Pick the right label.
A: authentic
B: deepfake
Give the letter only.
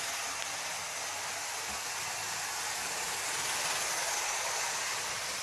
A